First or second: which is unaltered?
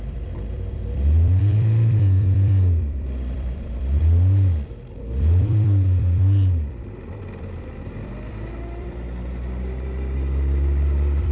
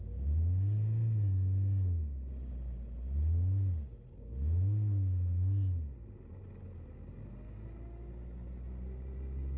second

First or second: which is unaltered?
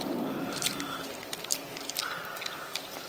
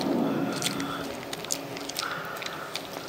second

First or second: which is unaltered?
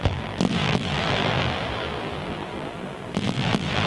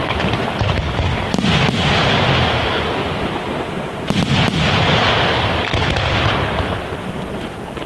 second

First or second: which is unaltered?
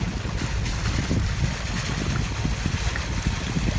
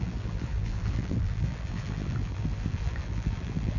first